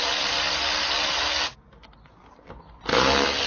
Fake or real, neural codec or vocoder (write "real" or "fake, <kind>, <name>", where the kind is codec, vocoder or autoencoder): real